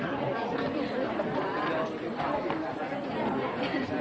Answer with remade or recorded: recorded